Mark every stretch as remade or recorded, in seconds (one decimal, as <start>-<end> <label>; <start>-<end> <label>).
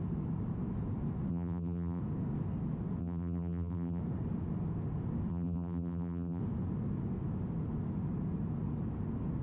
0.0-1.3 recorded; 1.3-2.0 remade; 2.0-3.0 recorded; 3.0-4.0 remade; 4.0-5.3 recorded; 5.3-6.4 remade; 6.4-9.4 recorded